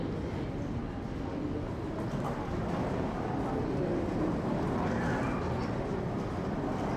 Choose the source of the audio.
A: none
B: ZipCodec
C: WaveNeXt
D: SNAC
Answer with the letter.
A